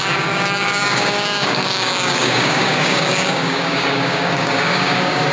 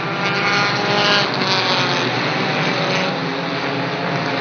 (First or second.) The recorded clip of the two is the second